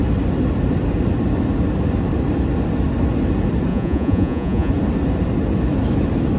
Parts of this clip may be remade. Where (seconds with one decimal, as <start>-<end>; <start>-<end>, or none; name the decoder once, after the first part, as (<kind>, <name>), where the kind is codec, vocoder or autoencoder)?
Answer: 3.7-4.7 (vocoder, Vocos)